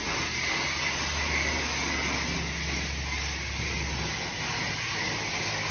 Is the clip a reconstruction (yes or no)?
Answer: no